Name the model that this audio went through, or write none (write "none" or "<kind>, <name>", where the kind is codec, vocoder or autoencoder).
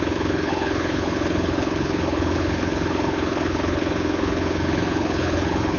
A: codec, HILCodec